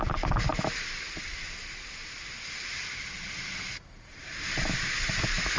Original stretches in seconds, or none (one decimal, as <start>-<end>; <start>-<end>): 0.0-2.7; 5.1-5.6